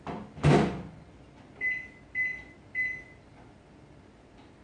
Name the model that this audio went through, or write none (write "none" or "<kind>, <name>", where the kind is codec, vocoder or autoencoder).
none